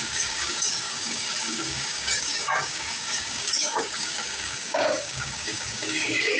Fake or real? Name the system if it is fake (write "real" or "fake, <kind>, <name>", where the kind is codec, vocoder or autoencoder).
fake, codec, DAC